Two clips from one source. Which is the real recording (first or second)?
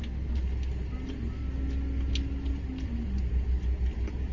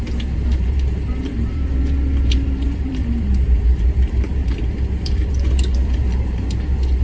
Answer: first